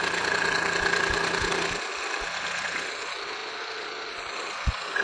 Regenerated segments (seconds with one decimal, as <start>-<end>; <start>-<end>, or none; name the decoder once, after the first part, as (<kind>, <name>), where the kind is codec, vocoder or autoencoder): none